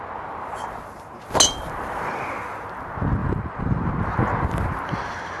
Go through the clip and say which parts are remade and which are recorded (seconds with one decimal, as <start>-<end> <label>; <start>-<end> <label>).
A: 0.0-3.2 recorded; 3.2-3.9 remade; 3.9-5.4 recorded